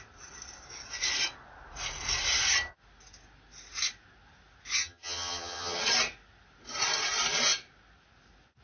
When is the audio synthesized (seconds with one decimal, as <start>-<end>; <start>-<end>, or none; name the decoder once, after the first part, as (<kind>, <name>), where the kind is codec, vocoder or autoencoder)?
4.8-5.8 (vocoder, HiFi-GAN)